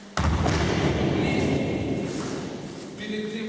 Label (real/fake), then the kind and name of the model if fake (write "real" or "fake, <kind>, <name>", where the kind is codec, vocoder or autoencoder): real